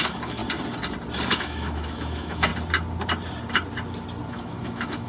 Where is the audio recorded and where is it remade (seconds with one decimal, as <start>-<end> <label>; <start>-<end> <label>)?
0.0-0.4 remade; 0.4-1.3 recorded; 1.3-2.5 remade; 2.5-4.3 recorded; 4.3-5.1 remade